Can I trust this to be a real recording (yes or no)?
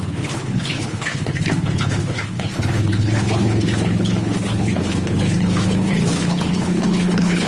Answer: no